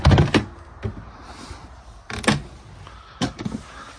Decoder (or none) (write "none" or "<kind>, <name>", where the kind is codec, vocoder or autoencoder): none